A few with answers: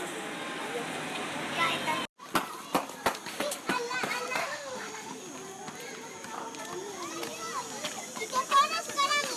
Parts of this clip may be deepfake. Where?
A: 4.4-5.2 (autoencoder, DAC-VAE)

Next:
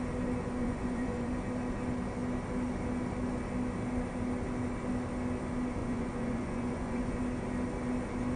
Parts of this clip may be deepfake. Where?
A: 0.6-1.3 (vocoder, Vocos); 5.8-7.2

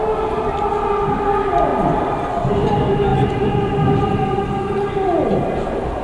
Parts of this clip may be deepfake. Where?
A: none

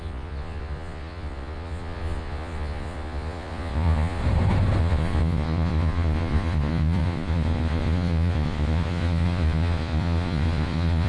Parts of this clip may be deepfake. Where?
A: 0.0-4.2 (vocoder, Vocos); 4.8-11.1

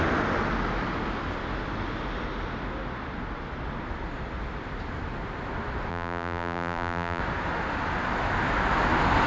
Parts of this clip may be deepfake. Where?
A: 5.9-7.2 (vocoder, BigVGAN v2)

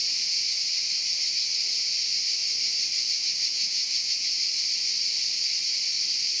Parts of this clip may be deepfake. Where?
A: 0.0-0.6 (vocoder, Vocos); 3.5-4.4